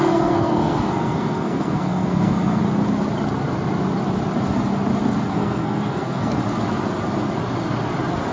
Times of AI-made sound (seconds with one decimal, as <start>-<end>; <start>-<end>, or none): 0.0-2.6; 5.3-6.4